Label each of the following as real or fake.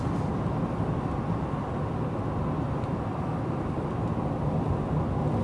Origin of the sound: real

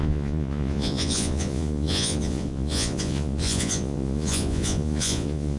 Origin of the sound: fake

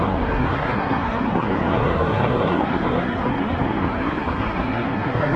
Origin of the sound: fake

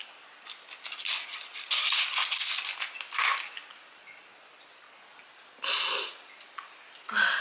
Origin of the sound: real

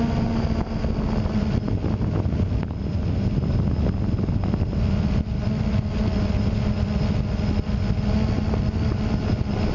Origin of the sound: real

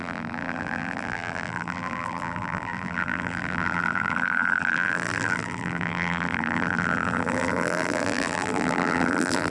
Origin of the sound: fake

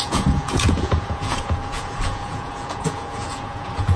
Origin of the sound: fake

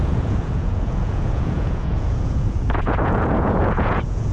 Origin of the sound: fake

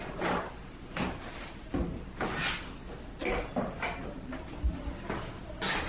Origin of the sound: real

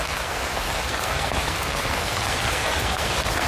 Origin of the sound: fake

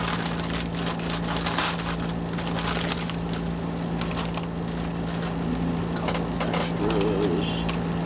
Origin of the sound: real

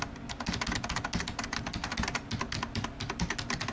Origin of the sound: real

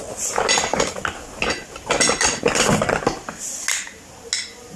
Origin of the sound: real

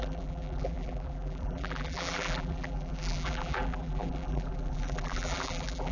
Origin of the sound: fake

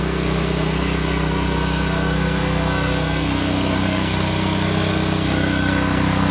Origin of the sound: fake